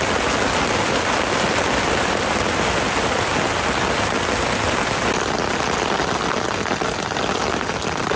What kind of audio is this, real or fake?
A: real